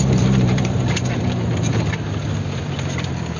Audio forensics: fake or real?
fake